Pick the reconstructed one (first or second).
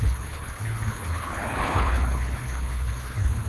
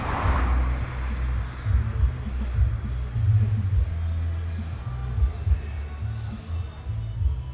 first